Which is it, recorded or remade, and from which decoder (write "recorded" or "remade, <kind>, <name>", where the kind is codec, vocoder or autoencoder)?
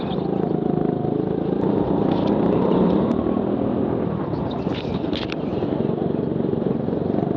remade, vocoder, BigVGAN v2